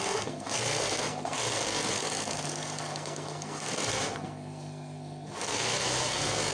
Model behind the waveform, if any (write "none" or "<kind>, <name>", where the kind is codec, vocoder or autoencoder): codec, SNAC